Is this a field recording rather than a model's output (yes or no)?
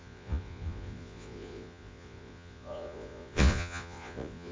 no